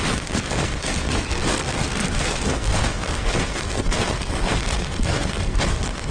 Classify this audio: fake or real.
fake